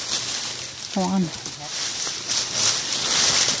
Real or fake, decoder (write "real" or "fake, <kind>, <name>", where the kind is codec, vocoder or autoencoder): real